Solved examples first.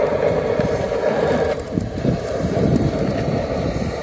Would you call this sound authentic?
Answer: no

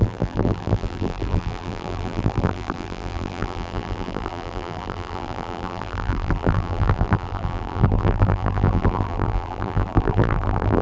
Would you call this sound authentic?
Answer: no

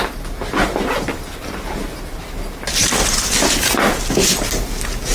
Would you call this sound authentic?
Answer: yes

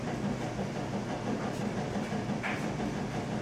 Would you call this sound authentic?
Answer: no